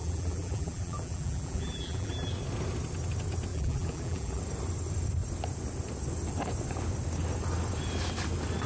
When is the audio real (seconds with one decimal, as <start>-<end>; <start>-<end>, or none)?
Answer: 2.3-3.5; 4.4-8.7